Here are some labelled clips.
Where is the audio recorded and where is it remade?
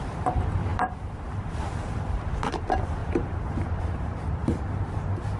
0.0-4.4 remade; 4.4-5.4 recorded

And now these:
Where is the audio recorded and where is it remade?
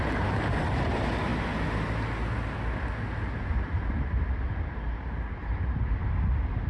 0.0-6.7 recorded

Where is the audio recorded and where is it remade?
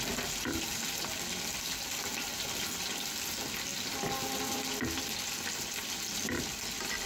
0.0-7.1 recorded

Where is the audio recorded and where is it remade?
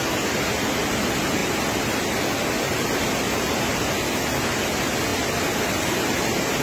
0.0-6.6 recorded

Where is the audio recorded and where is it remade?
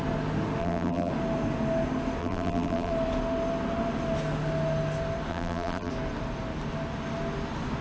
0.0-0.6 recorded; 0.6-1.1 remade; 1.1-2.2 recorded; 2.2-2.9 remade; 2.9-5.3 recorded; 5.3-5.9 remade; 5.9-7.8 recorded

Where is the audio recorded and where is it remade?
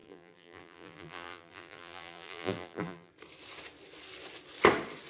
0.0-3.1 remade; 3.1-5.1 recorded